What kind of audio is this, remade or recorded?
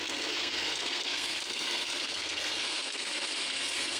remade